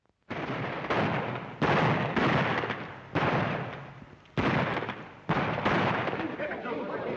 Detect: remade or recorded recorded